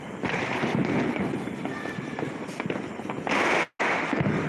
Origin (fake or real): real